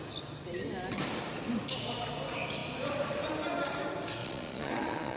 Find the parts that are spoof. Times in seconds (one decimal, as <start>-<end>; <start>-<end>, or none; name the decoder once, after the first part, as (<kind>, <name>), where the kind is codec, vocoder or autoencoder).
4.2-5.2 (vocoder, Vocos)